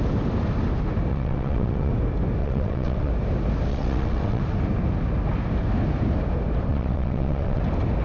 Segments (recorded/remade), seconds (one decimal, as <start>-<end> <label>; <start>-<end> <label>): 0.0-1.1 recorded; 1.1-1.9 remade; 1.9-2.4 recorded; 2.4-3.1 remade; 3.1-3.7 recorded; 3.7-4.4 remade; 4.4-6.7 recorded; 6.7-7.6 remade; 7.6-8.0 recorded